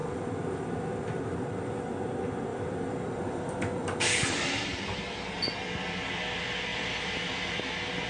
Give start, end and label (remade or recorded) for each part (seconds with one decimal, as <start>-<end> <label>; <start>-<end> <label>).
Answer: 0.0-1.2 remade; 1.2-2.5 recorded; 2.5-5.0 remade; 5.0-6.7 recorded; 6.7-7.6 remade; 7.6-8.1 recorded